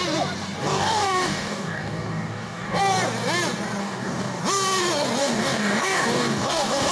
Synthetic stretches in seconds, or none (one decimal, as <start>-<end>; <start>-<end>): 0.6-2.8; 3.8-4.4; 5.2-6.9